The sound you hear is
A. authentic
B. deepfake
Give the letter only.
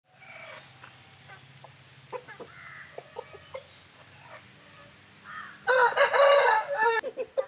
A